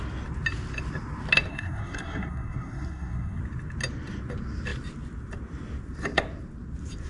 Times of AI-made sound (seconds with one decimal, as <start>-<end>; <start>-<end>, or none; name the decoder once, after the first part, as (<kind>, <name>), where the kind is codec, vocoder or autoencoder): 1.5-3.4 (codec, SNAC)